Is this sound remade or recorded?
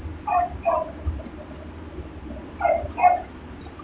recorded